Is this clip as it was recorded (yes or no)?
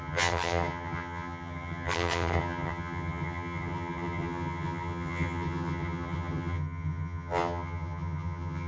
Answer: no